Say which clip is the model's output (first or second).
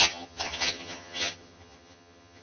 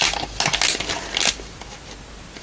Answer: first